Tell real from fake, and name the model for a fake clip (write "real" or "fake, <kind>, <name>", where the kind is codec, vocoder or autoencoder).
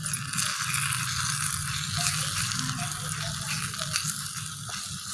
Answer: real